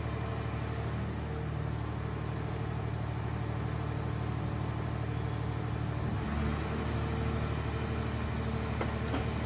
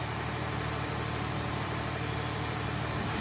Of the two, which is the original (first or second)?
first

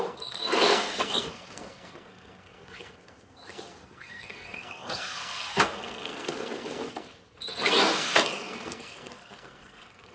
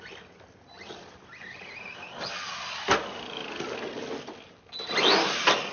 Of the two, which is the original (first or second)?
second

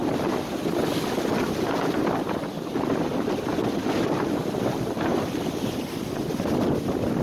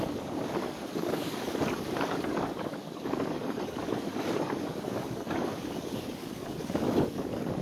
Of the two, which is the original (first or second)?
first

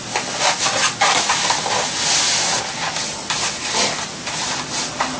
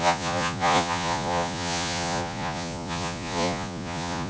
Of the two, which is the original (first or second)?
first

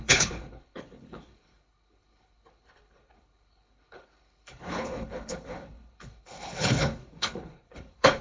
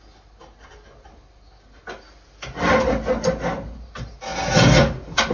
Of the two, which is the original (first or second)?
second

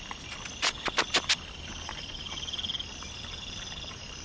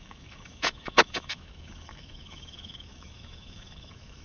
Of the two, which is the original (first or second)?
first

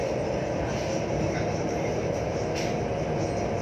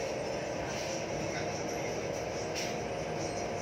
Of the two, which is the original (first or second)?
second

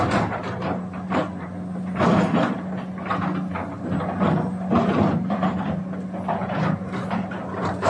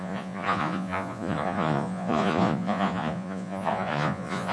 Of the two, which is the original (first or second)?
first